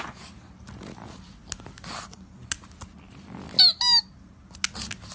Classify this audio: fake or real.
real